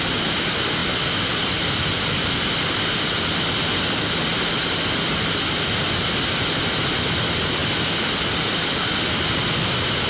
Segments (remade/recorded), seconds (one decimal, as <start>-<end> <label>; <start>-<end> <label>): 0.0-10.1 recorded

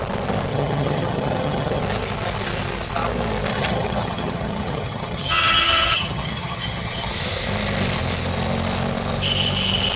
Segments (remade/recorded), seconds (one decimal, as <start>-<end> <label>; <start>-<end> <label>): 0.0-0.5 recorded; 0.5-1.8 remade; 1.8-3.5 recorded; 3.5-7.1 remade; 7.1-10.0 recorded

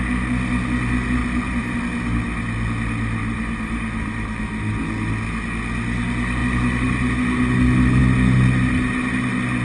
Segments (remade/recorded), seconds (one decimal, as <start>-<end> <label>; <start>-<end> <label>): 0.0-1.2 recorded; 1.2-1.8 remade; 1.8-3.2 recorded; 3.2-4.4 remade; 4.4-6.4 recorded; 6.4-7.1 remade; 7.1-9.6 recorded

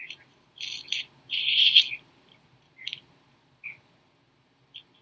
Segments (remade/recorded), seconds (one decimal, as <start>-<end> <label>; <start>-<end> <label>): 0.0-5.0 recorded